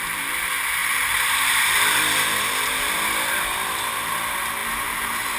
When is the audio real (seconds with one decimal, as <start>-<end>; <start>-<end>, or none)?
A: 0.0-0.8; 2.0-5.4

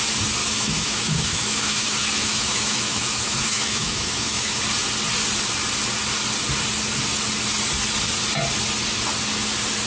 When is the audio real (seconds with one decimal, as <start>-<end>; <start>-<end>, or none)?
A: 0.0-0.4; 4.6-9.9

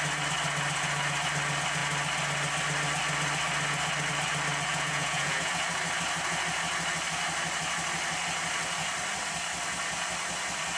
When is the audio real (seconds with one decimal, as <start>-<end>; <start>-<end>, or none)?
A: 0.0-4.7; 5.5-10.8